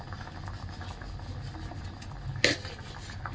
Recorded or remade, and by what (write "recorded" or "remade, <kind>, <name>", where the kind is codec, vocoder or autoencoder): recorded